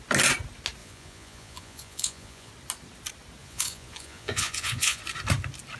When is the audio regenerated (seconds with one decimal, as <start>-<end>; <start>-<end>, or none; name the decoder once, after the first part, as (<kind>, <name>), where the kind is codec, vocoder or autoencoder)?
0.8-2.5 (vocoder, Vocos); 3.4-5.0